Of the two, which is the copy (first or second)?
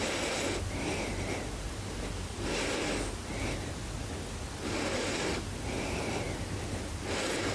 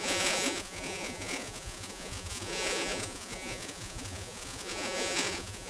second